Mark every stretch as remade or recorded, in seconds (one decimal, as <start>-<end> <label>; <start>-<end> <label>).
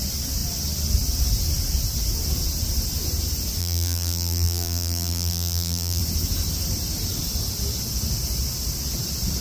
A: 0.0-3.6 recorded; 3.6-6.0 remade; 6.0-9.4 recorded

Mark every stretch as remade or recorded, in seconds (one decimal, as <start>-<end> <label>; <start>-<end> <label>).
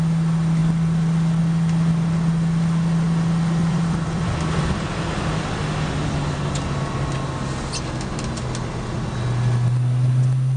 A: 0.0-3.6 recorded; 3.6-5.1 remade; 5.1-10.6 recorded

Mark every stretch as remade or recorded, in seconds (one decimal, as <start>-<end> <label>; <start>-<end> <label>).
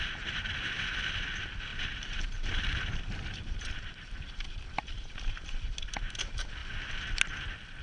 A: 0.0-1.7 recorded; 1.7-6.1 remade; 6.1-7.8 recorded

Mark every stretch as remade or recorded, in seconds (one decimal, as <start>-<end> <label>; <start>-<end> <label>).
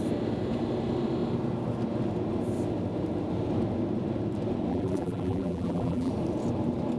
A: 0.0-4.7 recorded; 4.7-6.1 remade; 6.1-7.0 recorded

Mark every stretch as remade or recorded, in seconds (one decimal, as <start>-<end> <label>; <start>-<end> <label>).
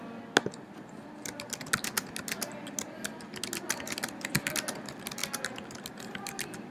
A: 0.0-6.7 recorded